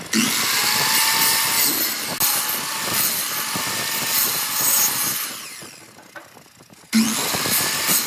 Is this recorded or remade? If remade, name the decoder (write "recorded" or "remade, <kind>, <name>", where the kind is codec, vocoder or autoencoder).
recorded